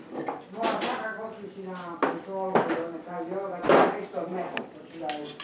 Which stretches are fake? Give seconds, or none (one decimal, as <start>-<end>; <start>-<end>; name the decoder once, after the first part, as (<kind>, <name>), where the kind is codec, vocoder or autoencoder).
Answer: none